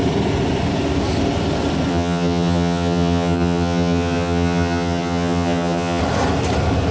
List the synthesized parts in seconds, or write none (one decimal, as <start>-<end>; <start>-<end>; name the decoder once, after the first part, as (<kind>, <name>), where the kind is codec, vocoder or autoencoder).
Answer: 1.9-6.0 (vocoder, HiFi-GAN)